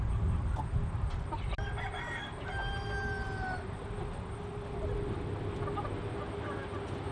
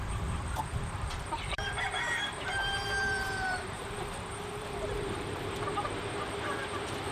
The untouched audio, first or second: first